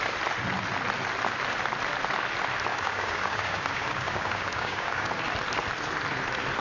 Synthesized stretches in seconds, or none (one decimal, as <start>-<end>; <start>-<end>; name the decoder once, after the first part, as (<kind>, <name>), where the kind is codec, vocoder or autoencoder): 2.7-5.1 (codec, DAC)